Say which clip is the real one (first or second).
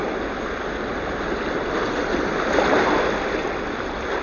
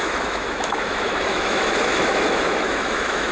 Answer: first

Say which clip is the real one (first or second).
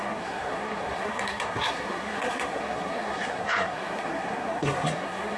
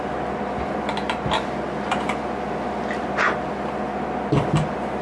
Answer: second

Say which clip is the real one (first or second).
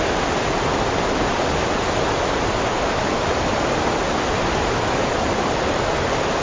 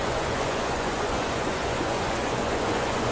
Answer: first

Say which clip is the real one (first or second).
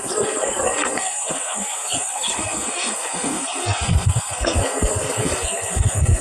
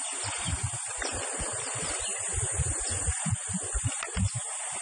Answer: second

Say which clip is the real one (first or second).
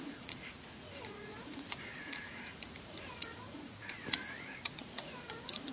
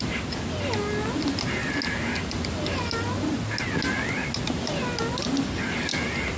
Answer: second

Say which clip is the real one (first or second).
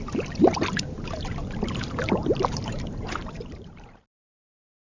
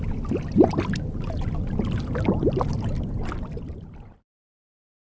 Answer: second